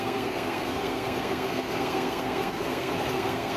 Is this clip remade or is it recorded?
remade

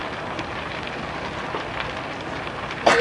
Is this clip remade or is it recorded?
recorded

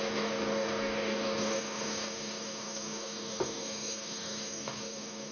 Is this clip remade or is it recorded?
remade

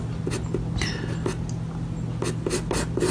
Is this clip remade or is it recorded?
recorded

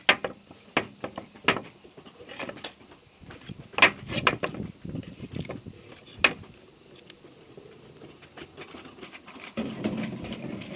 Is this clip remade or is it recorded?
recorded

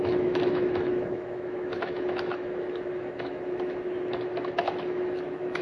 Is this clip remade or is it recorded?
remade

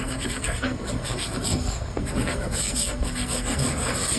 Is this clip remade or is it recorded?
remade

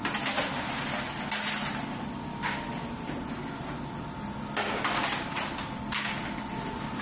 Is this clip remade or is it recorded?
recorded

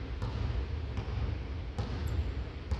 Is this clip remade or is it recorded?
recorded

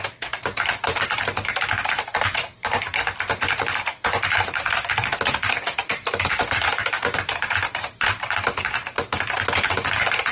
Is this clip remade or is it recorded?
remade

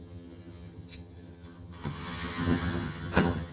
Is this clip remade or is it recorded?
remade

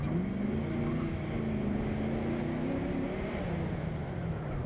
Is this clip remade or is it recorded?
recorded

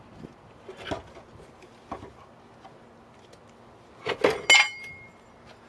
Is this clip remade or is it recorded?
recorded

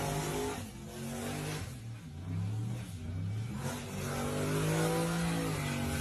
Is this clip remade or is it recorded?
recorded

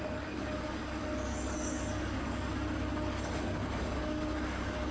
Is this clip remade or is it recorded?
remade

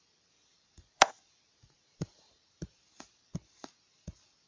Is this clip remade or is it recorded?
remade